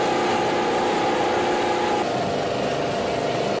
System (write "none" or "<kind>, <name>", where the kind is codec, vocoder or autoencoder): none